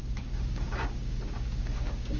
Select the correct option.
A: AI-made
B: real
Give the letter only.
A